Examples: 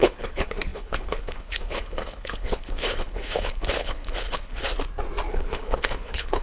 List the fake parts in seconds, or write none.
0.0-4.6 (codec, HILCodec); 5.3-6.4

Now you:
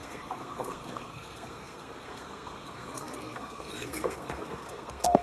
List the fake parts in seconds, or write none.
0.0-5.2 (codec, SNAC)

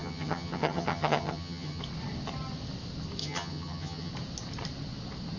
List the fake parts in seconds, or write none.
0.0-1.8 (vocoder, HiFi-GAN); 3.2-4.1

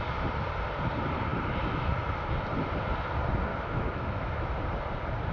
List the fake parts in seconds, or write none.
1.3-1.9 (autoencoder, DAC-VAE); 3.5-4.5

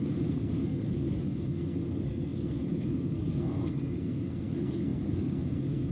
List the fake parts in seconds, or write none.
0.0-5.9 (codec, SNAC)

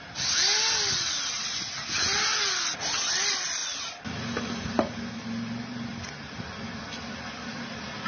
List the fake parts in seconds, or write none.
none

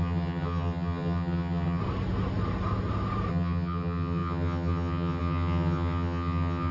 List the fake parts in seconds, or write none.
0.0-1.8 (vocoder, HiFi-GAN); 3.3-6.7

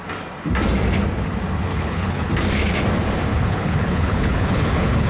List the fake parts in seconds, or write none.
1.7-2.3 (codec, HILCodec); 3.3-5.1